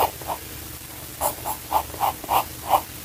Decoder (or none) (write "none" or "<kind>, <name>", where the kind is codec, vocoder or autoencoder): vocoder, BigVGAN v2